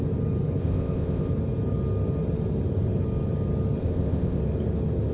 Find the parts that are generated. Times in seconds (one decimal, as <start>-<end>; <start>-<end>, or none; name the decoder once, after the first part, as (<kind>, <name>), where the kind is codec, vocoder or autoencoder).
0.6-1.3 (codec, ZipCodec); 3.8-4.4